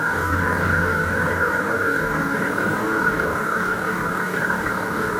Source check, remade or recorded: remade